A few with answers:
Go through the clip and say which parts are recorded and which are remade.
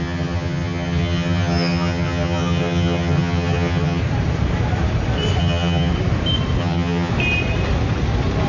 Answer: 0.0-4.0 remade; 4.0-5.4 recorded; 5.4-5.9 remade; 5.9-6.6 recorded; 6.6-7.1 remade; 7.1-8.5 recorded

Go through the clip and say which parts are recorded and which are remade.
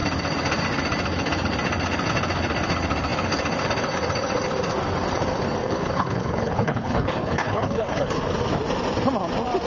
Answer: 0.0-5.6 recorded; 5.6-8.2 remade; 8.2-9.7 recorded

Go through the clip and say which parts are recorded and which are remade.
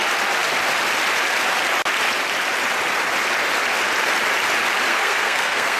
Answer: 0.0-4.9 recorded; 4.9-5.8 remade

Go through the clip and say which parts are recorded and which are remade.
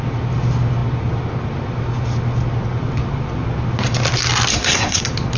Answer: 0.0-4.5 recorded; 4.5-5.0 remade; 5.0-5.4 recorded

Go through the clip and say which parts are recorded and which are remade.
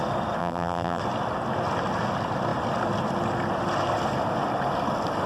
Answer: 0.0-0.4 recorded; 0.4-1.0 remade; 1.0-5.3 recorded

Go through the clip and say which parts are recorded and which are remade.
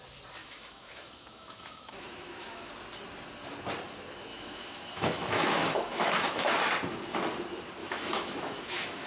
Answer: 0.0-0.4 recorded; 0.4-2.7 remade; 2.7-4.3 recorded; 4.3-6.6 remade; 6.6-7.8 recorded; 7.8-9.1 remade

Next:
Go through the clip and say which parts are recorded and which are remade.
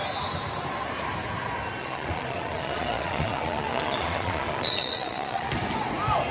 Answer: 0.0-1.8 recorded; 1.8-5.5 remade; 5.5-6.3 recorded